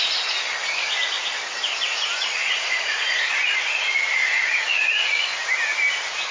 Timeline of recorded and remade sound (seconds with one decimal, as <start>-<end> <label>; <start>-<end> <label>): 0.0-2.4 recorded; 2.4-5.3 remade; 5.3-6.3 recorded